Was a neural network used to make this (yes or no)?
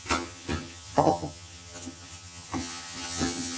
yes